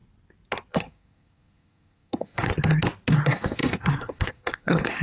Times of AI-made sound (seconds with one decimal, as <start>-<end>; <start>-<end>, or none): 0.7-2.5; 3.1-5.0